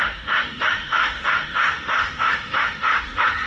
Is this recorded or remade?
remade